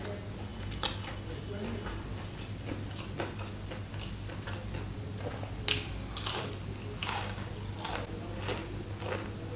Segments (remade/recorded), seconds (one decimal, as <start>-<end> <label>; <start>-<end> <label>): 0.0-7.0 recorded; 7.0-7.5 remade; 7.5-9.6 recorded